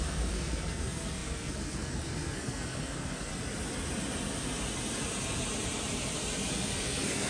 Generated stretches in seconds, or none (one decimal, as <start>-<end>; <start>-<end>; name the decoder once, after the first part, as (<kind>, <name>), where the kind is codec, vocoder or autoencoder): 0.0-3.3 (codec, SNAC); 6.5-7.3